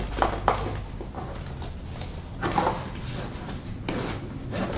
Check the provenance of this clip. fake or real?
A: real